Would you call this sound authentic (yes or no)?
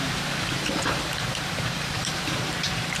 no